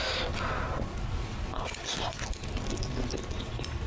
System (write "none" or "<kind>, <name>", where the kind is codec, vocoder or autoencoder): none